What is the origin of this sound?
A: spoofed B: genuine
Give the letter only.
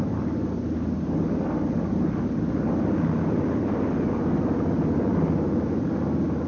B